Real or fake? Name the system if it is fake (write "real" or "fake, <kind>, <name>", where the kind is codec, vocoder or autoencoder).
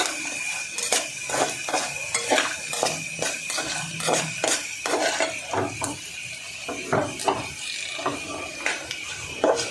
fake, vocoder, BigVGAN v2